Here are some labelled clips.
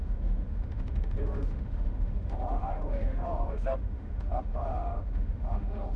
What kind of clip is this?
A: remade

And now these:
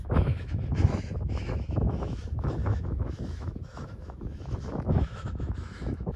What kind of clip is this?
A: remade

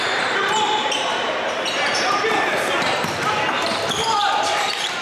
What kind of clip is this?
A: remade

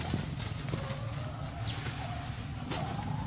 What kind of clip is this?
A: recorded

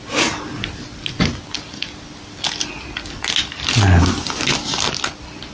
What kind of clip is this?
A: recorded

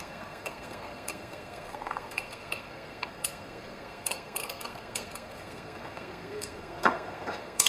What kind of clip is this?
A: remade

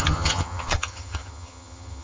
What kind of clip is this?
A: remade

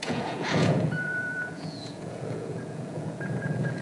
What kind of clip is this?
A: remade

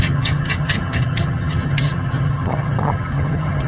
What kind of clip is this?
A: remade